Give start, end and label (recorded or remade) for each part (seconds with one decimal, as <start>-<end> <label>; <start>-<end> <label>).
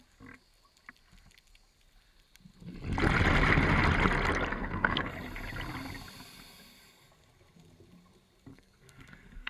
0.0-4.5 recorded; 4.5-5.1 remade; 5.1-8.5 recorded; 8.5-9.5 remade